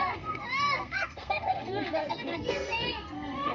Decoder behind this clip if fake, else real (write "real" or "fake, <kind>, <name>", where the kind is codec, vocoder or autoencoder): fake, codec, SNAC